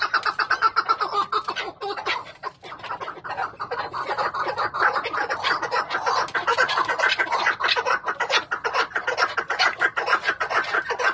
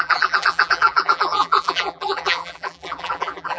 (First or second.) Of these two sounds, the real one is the first